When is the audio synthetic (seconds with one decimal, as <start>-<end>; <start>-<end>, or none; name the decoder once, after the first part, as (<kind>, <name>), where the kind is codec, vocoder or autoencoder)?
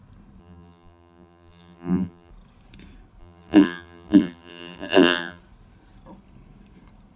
0.4-2.3 (vocoder, BigVGAN v2); 3.2-5.4